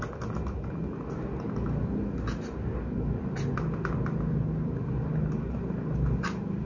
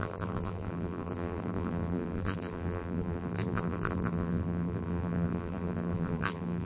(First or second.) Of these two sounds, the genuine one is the first